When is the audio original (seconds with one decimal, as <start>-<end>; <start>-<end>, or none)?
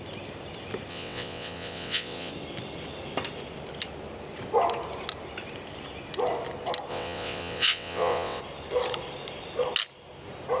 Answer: 0.0-0.9; 2.3-6.9; 8.4-10.6